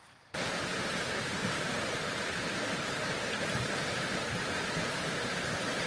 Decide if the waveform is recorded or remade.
remade